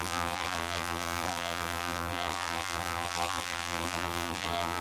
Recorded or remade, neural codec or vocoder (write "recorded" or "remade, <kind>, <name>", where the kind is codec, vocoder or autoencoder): remade, vocoder, BigVGAN v2